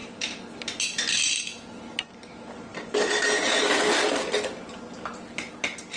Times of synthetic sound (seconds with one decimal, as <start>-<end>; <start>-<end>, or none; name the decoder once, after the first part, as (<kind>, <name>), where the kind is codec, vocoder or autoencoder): none